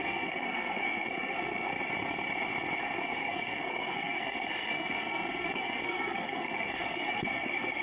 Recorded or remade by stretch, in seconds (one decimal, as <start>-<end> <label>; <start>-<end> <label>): 0.0-1.7 remade; 1.7-2.8 recorded; 2.8-7.8 remade